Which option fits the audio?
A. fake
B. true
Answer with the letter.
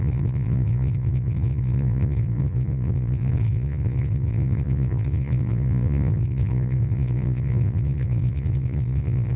A